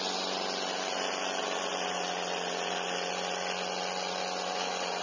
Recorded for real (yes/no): yes